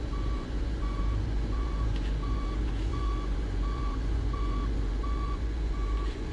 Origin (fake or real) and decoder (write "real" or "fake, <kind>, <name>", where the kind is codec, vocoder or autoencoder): fake, vocoder, Vocos